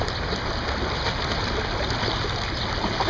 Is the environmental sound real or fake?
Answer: real